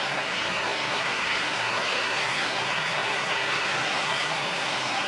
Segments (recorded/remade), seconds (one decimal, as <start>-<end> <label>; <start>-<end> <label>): 0.0-5.1 remade